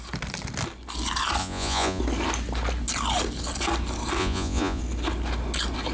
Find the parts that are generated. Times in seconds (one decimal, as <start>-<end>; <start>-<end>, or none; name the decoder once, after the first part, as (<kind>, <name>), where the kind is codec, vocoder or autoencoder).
1.4-2.0 (vocoder, Vocos); 4.2-4.8